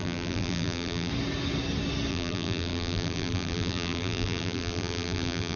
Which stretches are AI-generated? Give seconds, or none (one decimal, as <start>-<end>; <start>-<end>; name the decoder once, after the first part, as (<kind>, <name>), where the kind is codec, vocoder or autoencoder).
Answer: 0.0-1.1 (vocoder, BigVGAN v2); 2.1-5.6